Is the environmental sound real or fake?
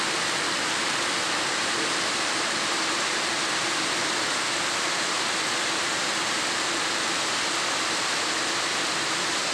real